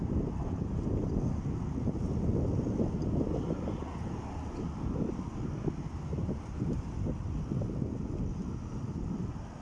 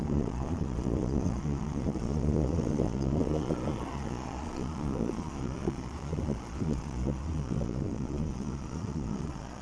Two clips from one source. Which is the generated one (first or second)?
second